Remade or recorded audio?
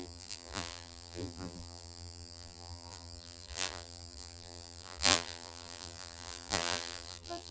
remade